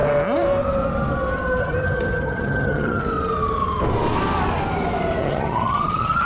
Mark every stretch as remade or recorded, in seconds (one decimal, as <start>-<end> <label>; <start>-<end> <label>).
0.0-1.6 recorded; 1.6-3.0 remade; 3.0-5.2 recorded; 5.2-6.3 remade